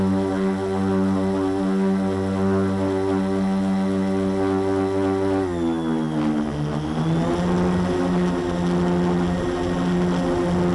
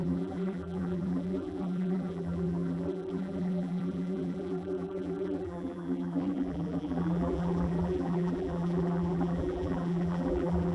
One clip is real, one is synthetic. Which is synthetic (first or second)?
second